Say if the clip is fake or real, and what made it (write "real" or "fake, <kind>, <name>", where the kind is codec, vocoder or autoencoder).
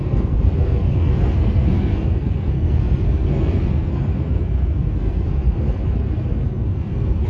fake, codec, SNAC